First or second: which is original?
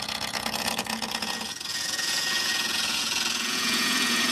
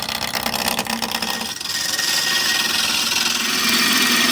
second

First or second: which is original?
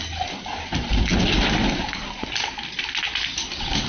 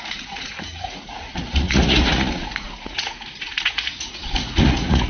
first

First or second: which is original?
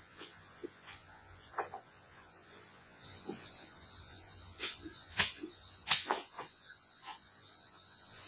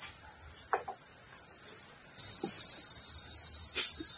second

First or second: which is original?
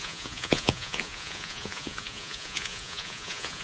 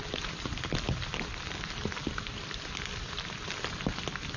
second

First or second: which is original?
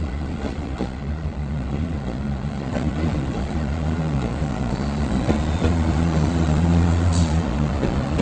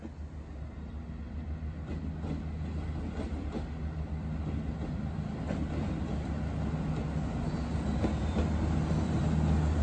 second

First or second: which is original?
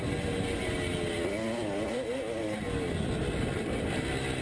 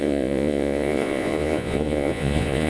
first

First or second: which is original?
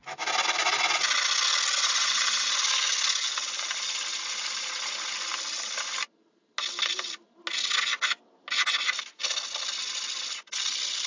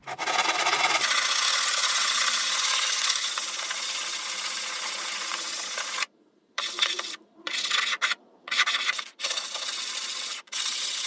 first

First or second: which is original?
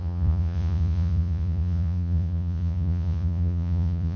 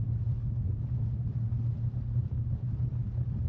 second